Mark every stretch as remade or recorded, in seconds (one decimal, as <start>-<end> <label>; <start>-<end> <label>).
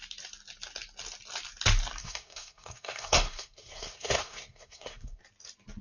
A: 0.0-2.0 recorded; 2.0-5.2 remade; 5.2-5.8 recorded